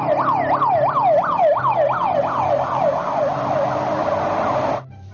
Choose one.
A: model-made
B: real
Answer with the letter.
B